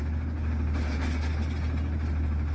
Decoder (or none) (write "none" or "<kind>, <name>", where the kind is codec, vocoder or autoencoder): none